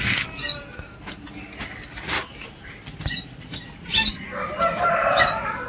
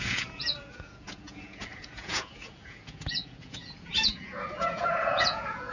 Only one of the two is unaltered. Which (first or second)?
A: first